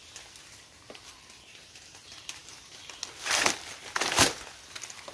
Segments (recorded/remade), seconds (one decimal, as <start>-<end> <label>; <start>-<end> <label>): 0.0-5.1 recorded